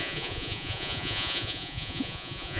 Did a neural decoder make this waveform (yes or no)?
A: yes